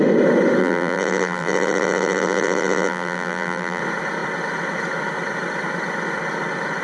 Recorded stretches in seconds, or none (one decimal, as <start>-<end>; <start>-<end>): 0.0-0.6; 3.8-6.8